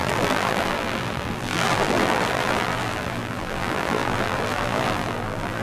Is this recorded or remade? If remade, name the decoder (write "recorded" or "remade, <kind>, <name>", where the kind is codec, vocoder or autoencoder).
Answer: remade, vocoder, BigVGAN v2